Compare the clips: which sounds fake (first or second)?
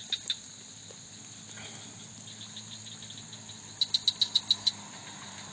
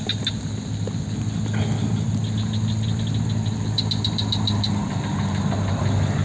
second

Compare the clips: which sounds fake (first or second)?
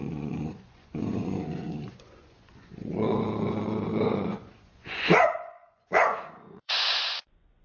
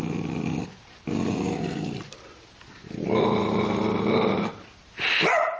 first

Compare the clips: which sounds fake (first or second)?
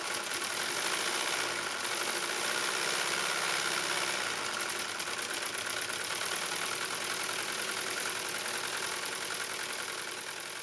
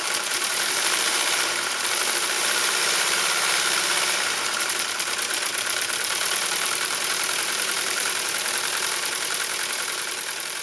second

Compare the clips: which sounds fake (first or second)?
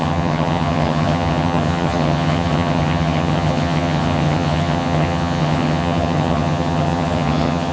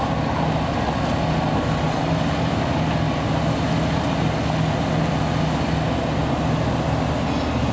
first